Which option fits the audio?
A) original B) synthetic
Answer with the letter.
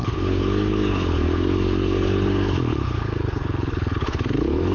B